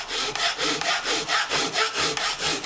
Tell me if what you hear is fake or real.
real